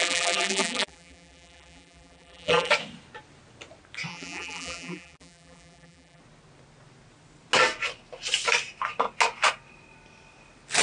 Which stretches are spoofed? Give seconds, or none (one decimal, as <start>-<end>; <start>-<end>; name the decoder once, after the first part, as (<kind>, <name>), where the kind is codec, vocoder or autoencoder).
0.0-2.7 (vocoder, BigVGAN v2); 4.1-6.2